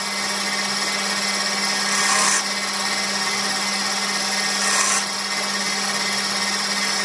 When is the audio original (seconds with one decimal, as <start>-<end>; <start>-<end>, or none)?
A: 0.0-7.0